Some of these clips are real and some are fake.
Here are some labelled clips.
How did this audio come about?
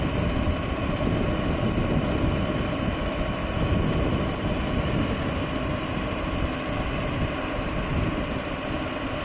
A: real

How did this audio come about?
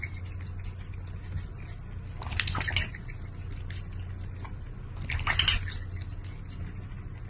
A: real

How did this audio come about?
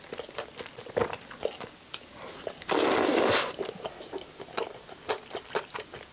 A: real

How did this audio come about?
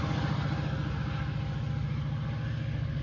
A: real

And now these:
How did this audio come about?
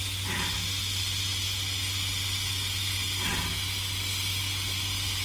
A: real